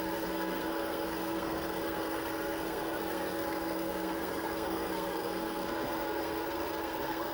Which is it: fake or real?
fake